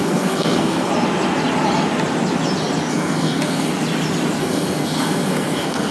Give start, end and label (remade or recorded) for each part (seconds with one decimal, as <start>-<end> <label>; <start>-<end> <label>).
0.0-0.9 remade; 0.9-2.9 recorded; 2.9-3.7 remade; 3.7-4.4 recorded; 4.4-5.9 remade